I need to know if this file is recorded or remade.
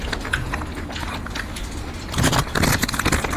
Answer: recorded